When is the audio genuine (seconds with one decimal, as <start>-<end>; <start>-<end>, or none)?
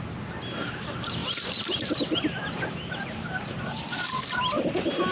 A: 0.0-5.1